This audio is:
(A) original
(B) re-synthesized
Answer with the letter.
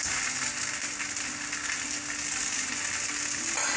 A